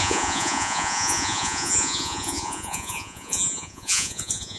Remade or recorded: remade